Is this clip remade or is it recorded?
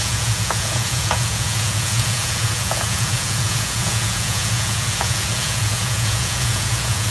remade